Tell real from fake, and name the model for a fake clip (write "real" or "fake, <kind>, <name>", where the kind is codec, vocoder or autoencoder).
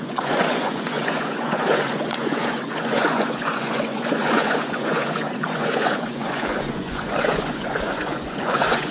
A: fake, vocoder, Vocos